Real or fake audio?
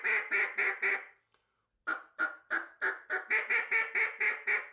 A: real